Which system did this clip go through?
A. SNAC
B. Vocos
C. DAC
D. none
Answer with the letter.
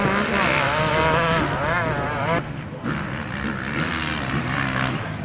D